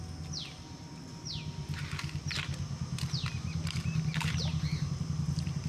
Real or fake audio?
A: real